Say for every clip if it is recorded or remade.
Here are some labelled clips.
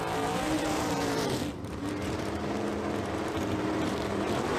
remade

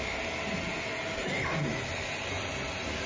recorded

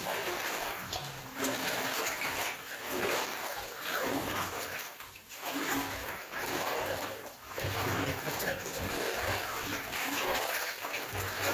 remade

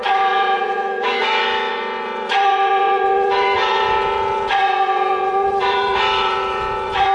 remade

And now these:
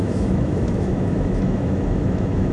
remade